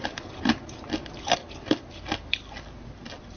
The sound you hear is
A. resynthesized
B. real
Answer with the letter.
B